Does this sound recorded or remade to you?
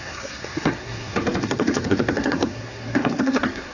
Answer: remade